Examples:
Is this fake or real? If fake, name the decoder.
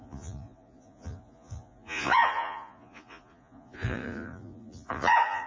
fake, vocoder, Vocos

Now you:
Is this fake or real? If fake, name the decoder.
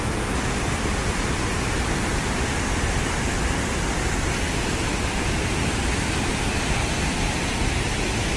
real